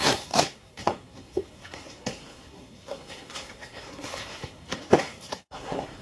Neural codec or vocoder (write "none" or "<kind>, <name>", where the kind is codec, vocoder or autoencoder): codec, SNAC